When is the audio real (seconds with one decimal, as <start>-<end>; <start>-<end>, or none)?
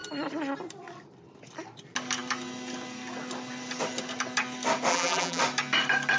0.0-4.9; 5.4-6.2